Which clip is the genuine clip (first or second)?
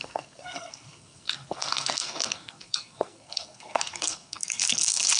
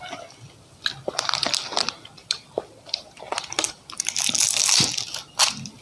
second